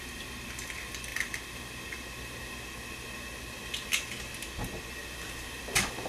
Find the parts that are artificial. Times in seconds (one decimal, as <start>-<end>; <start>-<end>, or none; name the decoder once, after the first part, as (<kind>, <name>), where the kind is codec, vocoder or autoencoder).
none